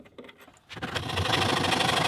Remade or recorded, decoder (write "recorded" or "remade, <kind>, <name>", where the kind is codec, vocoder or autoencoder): recorded